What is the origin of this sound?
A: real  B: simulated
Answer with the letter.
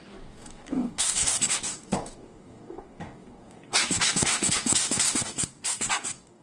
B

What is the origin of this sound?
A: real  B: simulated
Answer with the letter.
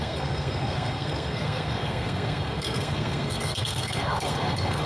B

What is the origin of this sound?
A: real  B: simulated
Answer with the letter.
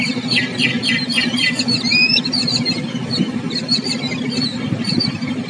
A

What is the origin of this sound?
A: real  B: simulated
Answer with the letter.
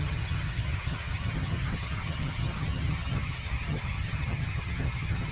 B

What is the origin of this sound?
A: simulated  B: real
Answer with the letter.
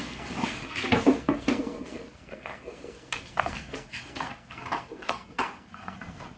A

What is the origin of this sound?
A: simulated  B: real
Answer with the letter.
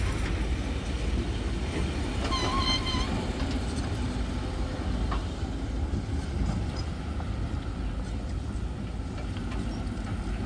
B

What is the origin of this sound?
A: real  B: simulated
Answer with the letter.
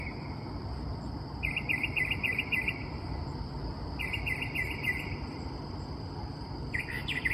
B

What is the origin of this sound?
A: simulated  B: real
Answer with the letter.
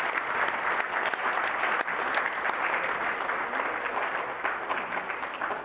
B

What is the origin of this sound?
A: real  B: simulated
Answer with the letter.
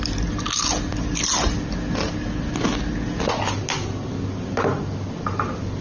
A